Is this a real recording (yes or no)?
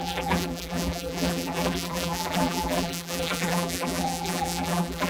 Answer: no